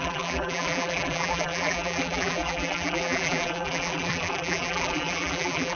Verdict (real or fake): fake